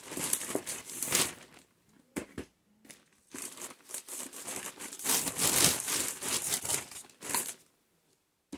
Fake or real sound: real